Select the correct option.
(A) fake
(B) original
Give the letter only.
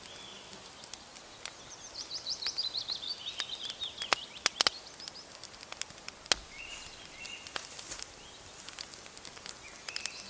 B